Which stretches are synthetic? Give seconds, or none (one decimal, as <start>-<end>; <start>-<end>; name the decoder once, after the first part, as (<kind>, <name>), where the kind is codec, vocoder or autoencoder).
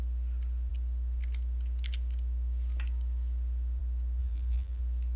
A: 4.2-4.8 (vocoder, BigVGAN v2)